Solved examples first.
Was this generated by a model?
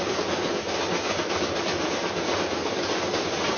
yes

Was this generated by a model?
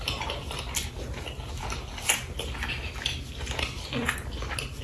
no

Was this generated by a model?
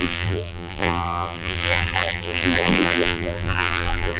yes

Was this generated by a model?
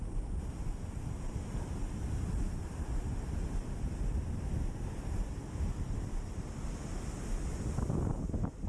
no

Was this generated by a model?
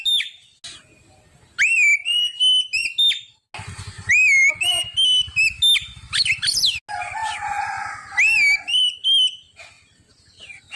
no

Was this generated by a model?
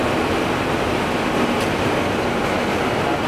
no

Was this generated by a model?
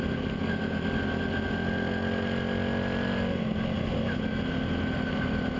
no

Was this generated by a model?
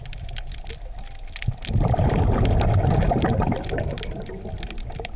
no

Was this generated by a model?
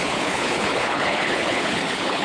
yes